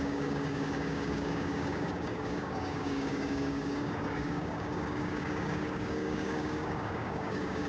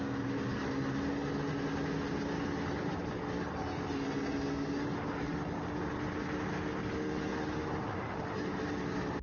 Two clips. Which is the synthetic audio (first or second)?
first